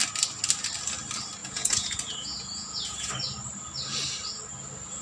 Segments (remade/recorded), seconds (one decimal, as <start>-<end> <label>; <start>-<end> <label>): 0.0-1.4 recorded; 1.4-3.1 remade; 3.1-5.0 recorded